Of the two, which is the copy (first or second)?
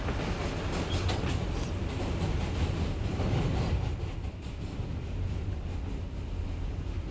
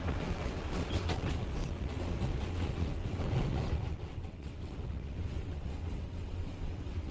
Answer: second